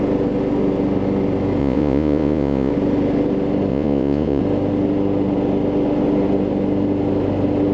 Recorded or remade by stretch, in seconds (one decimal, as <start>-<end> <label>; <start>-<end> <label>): 0.0-1.6 recorded; 1.6-2.7 remade; 2.7-3.7 recorded; 3.7-4.4 remade; 4.4-7.7 recorded